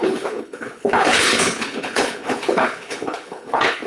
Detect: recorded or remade remade